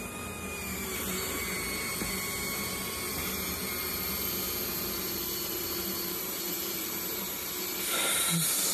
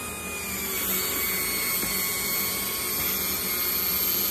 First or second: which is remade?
first